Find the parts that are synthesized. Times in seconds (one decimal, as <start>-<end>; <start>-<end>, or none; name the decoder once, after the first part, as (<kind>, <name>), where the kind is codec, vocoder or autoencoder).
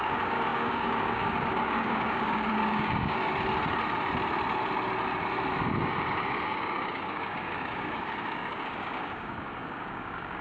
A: 0.0-3.3 (codec, DAC); 5.8-10.4